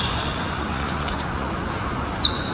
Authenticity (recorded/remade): remade